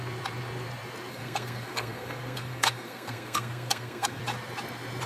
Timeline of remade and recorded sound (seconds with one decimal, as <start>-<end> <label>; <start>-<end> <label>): 0.0-1.1 recorded; 1.1-4.2 remade; 4.2-5.1 recorded